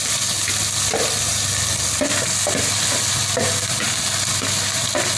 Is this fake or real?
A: real